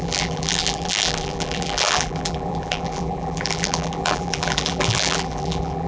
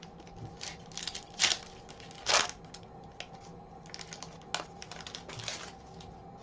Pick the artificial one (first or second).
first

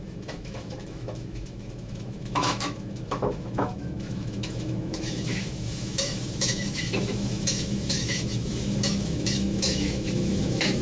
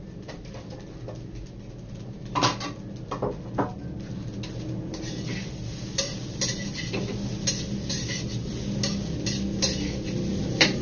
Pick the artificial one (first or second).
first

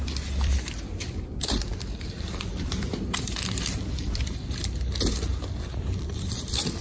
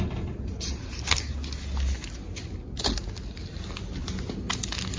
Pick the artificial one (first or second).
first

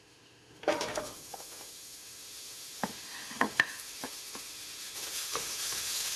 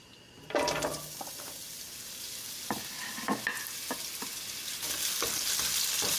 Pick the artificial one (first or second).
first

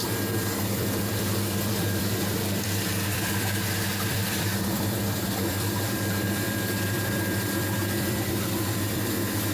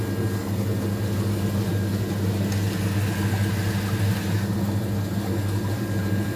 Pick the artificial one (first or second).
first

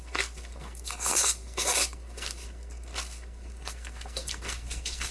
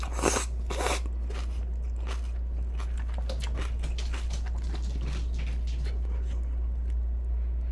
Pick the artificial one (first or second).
first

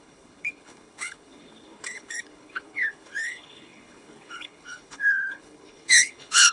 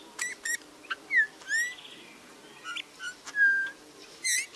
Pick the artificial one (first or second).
first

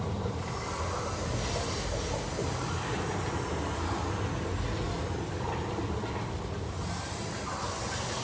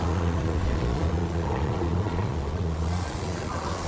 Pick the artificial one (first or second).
second